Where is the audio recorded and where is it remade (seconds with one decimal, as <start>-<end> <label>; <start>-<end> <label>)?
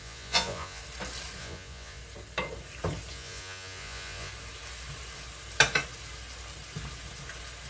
0.0-0.8 remade; 0.8-1.4 recorded; 1.4-2.0 remade; 2.0-3.1 recorded; 3.1-4.3 remade; 4.3-7.7 recorded